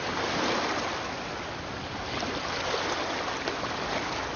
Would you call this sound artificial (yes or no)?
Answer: no